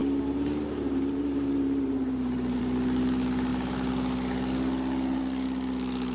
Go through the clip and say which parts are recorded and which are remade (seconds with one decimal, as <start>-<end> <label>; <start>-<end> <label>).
0.0-2.6 remade; 2.6-6.1 recorded